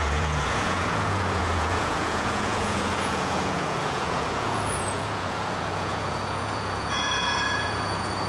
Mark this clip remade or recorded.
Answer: remade